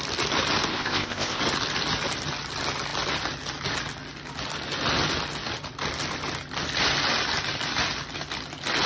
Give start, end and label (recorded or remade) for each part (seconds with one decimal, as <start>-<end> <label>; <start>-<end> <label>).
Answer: 0.0-0.7 recorded; 0.7-1.4 remade; 1.4-8.9 recorded